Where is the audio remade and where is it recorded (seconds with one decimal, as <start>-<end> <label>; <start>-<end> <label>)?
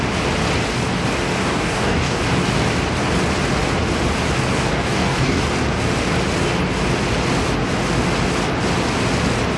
0.0-1.4 recorded; 1.4-2.2 remade; 2.2-4.5 recorded; 4.5-5.4 remade; 5.4-9.6 recorded